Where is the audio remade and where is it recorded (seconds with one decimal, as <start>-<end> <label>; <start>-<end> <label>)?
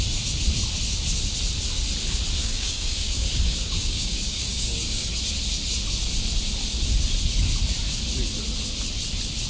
0.0-2.4 recorded; 2.4-5.1 remade; 5.1-9.5 recorded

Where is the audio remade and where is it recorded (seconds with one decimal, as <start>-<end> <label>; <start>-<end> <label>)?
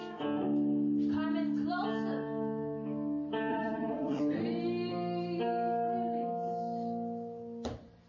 0.0-3.5 recorded; 3.5-4.2 remade; 4.2-8.1 recorded